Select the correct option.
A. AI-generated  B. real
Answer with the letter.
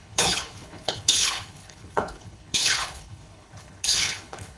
A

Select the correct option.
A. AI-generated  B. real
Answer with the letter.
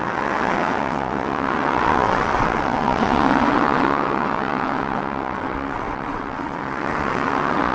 A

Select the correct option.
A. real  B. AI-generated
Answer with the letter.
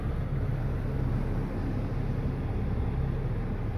A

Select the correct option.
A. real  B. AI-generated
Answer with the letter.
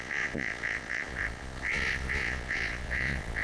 B